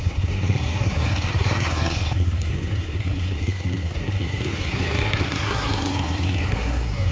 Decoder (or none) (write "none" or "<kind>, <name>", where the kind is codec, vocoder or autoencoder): codec, SNAC